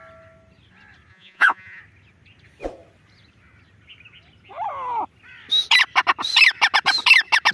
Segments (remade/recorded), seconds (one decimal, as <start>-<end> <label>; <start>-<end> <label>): 0.0-1.1 recorded; 1.1-1.8 remade; 1.8-7.5 recorded

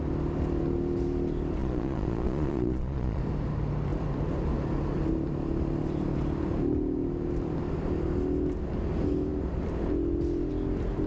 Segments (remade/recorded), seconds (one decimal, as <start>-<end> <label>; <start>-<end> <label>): 0.0-1.6 recorded; 1.6-3.2 remade; 3.2-11.1 recorded

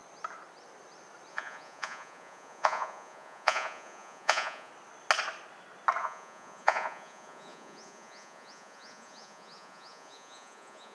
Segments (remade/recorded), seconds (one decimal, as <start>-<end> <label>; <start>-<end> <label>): 0.0-1.3 recorded; 1.3-4.7 remade; 4.7-6.0 recorded; 6.0-10.9 remade

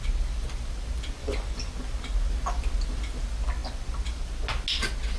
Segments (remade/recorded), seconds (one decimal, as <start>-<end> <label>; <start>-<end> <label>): 0.0-1.2 recorded; 1.2-1.7 remade; 1.7-5.2 recorded

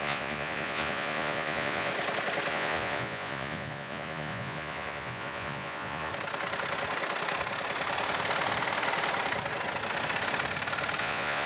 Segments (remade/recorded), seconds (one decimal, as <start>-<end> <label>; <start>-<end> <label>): 0.0-1.9 remade; 1.9-2.5 recorded; 2.5-6.1 remade; 6.1-11.0 recorded; 11.0-11.5 remade

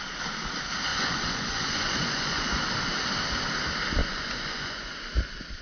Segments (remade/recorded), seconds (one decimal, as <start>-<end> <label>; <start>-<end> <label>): 0.0-0.9 recorded; 0.9-2.6 remade; 2.6-4.0 recorded; 4.0-4.9 remade; 4.9-5.6 recorded

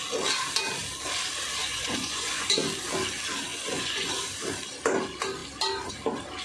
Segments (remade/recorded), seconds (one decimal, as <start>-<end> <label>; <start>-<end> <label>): 0.0-1.6 recorded; 1.6-2.5 remade; 2.5-3.5 recorded; 3.5-4.1 remade; 4.1-6.4 recorded

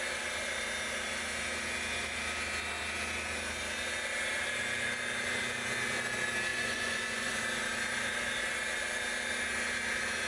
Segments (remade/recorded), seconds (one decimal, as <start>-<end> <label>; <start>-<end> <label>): 0.0-6.5 recorded; 6.5-7.4 remade; 7.4-10.3 recorded